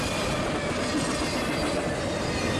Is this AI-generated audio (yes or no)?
no